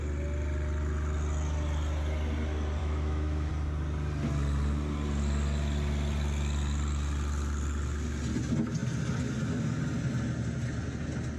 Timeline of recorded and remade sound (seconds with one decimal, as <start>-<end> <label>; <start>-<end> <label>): 0.0-2.8 recorded; 2.8-3.5 remade; 3.5-11.4 recorded